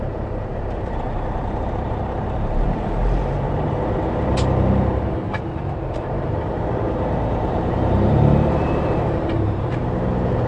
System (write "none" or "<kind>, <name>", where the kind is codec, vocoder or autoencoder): vocoder, BigVGAN v2